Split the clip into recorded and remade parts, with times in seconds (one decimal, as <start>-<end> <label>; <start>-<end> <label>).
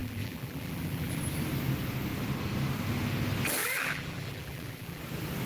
0.0-1.2 remade; 1.2-3.6 recorded; 3.6-5.0 remade; 5.0-5.5 recorded